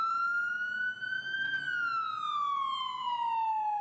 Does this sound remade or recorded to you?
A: recorded